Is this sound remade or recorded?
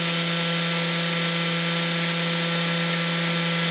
recorded